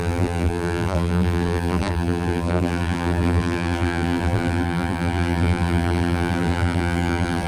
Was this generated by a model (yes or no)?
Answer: yes